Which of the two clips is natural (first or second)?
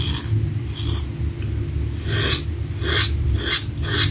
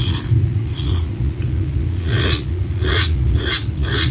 first